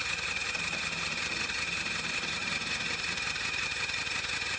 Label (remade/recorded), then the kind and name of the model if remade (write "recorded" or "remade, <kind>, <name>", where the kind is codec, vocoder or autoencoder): remade, vocoder, BigVGAN v2